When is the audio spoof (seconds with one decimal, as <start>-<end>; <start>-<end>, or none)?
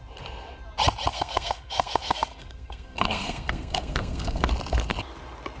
1.1-4.5